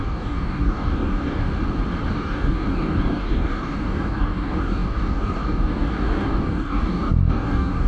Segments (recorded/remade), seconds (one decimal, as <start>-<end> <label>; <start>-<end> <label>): 0.0-1.5 remade; 1.5-2.1 recorded; 2.1-7.9 remade